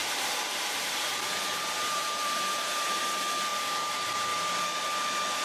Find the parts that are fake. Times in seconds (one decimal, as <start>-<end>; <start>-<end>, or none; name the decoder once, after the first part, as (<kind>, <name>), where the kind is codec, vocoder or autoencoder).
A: 0.0-3.0 (vocoder, BigVGAN v2)